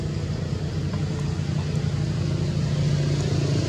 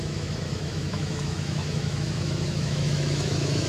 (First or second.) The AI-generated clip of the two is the second